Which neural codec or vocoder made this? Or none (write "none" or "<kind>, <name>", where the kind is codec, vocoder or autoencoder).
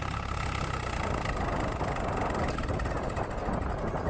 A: none